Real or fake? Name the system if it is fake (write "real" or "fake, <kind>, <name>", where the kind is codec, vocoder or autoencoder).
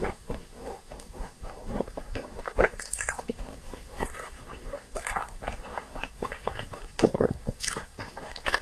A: fake, codec, SNAC